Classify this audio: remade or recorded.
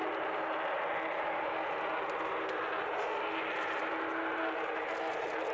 recorded